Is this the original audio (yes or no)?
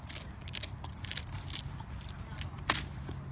yes